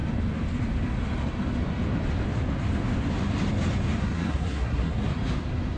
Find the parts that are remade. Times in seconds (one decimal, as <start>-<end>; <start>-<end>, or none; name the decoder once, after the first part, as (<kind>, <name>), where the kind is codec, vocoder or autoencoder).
4.0-5.1 (codec, SNAC)